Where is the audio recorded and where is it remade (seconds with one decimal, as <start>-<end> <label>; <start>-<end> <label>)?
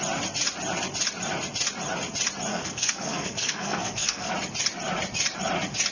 0.0-2.5 recorded; 2.5-4.3 remade; 4.3-5.9 recorded